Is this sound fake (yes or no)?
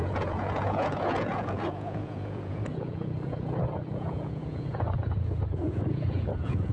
yes